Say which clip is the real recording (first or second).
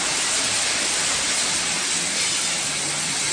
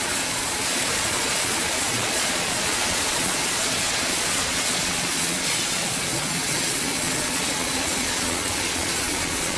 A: first